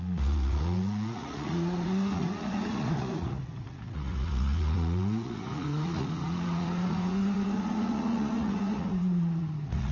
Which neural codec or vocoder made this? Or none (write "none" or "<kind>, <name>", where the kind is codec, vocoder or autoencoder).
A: vocoder, Vocos